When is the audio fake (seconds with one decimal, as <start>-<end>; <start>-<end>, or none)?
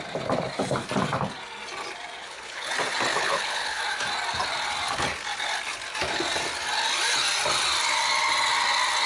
2.2-2.7; 3.1-3.8